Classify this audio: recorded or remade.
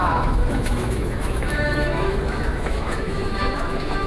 remade